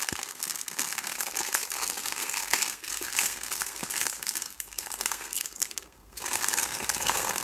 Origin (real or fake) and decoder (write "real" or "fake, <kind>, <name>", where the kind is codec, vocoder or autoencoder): fake, codec, SNAC